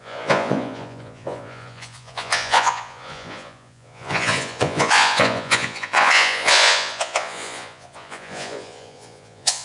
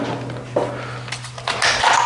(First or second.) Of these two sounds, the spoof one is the first